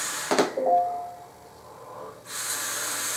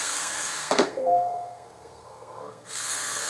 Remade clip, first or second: second